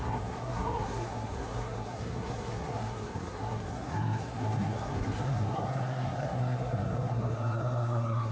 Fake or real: fake